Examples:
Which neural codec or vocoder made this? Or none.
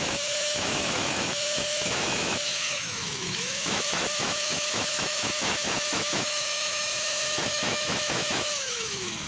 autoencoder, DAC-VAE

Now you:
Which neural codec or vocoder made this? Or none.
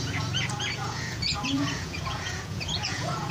vocoder, Vocos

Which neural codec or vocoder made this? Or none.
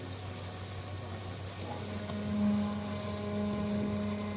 none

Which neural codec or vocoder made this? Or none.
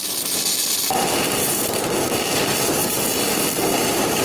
vocoder, BigVGAN v2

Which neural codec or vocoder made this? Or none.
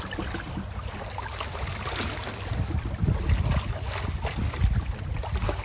none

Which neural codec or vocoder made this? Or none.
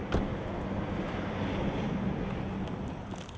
none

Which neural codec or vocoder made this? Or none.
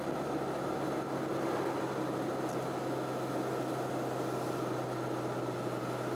none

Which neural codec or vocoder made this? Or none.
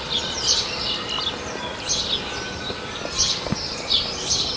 none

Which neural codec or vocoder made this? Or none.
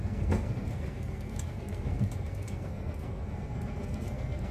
codec, SNAC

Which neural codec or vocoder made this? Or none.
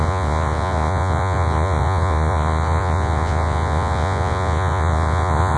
vocoder, Vocos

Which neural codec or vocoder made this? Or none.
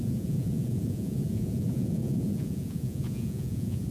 vocoder, Vocos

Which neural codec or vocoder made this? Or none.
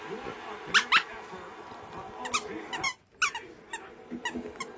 none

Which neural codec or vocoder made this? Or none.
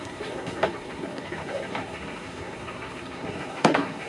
codec, SNAC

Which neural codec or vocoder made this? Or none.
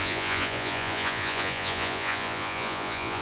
vocoder, Vocos